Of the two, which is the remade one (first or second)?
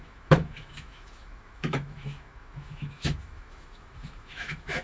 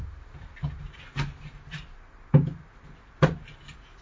first